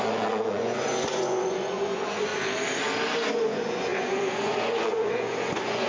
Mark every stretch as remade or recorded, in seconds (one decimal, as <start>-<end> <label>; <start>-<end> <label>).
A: 0.0-2.3 remade; 2.3-3.3 recorded; 3.3-5.9 remade